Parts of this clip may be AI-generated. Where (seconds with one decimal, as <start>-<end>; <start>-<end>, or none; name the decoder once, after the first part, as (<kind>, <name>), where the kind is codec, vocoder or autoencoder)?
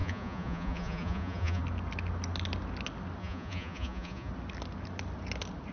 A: 0.0-1.6 (vocoder, Vocos); 3.2-4.3